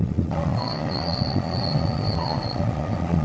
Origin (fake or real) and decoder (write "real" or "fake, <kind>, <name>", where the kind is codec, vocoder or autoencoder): fake, vocoder, Vocos